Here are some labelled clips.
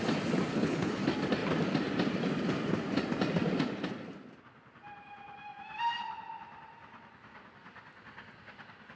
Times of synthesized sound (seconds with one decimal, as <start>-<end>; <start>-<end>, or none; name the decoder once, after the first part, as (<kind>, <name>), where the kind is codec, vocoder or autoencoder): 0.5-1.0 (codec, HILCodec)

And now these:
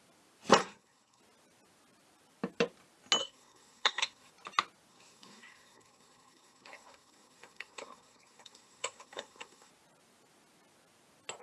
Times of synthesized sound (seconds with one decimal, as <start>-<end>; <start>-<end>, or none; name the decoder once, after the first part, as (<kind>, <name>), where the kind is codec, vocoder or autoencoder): 0.6-1.2 (codec, SNAC); 3.2-4.3; 4.9-9.7

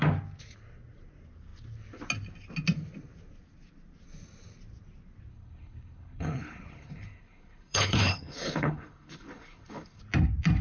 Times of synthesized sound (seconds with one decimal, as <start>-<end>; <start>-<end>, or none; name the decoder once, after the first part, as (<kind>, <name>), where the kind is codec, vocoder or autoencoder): 5.3-10.0 (codec, HILCodec)